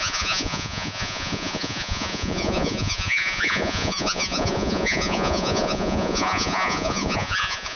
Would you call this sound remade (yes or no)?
yes